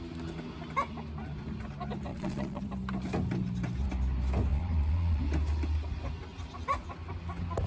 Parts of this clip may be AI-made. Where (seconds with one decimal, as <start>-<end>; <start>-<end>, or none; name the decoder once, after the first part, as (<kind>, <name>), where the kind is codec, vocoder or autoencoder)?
2.1-2.6 (vocoder, Vocos); 4.5-5.2